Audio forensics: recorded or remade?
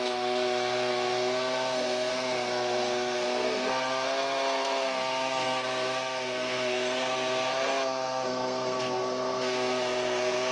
remade